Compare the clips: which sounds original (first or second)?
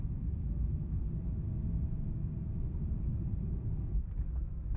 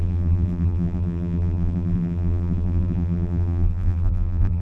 first